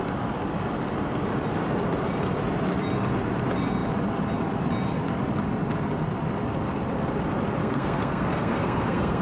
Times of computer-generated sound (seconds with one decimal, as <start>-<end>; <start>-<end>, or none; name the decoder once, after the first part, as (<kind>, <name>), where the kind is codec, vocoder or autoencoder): 7.6-9.2 (codec, SNAC)